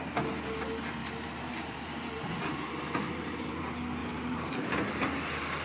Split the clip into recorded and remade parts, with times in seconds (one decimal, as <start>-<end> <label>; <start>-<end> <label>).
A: 0.0-1.0 recorded; 1.0-3.6 remade; 3.6-4.0 recorded; 4.0-4.9 remade; 4.9-5.6 recorded